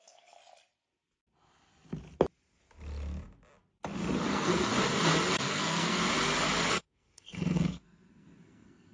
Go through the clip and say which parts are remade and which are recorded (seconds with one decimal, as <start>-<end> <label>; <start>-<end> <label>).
0.0-0.4 remade; 0.4-4.3 recorded; 4.3-4.7 remade; 4.7-5.3 recorded; 5.3-6.0 remade; 6.0-6.6 recorded; 6.6-8.9 remade